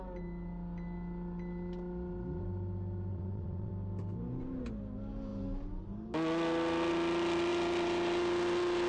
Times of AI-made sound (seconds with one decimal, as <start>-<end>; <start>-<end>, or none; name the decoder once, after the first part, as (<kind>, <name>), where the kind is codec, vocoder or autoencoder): 3.1-3.7 (vocoder, WaveNeXt)